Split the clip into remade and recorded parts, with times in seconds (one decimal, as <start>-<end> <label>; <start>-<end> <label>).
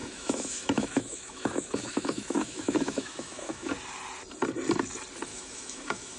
0.0-3.7 remade; 3.7-5.3 recorded; 5.3-6.2 remade